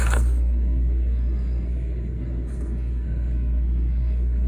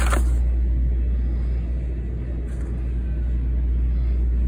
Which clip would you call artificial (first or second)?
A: first